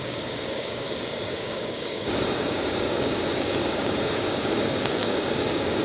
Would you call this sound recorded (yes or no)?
no